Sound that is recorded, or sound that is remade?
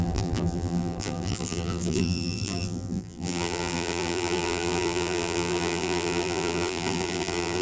remade